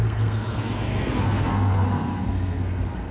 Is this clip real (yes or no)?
no